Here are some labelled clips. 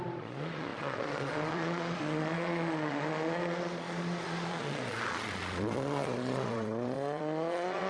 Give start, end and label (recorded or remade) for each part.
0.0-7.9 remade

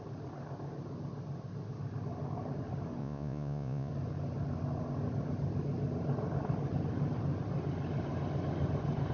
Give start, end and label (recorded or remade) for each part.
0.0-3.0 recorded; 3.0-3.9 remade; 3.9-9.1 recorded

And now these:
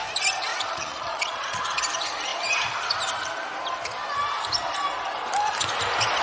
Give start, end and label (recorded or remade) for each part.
0.0-0.5 recorded; 0.5-1.6 remade; 1.6-6.2 recorded